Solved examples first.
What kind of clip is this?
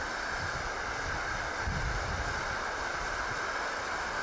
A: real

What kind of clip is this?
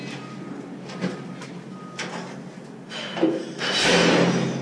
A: real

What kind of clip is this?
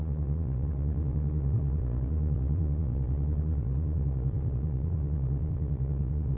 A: fake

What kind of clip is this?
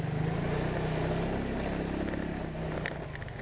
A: real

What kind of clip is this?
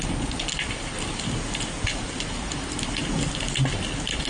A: real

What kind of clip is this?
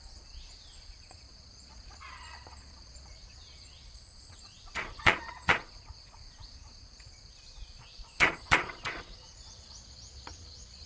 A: fake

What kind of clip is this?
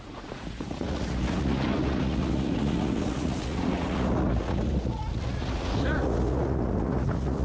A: fake